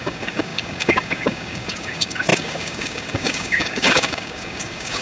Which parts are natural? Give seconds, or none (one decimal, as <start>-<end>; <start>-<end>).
none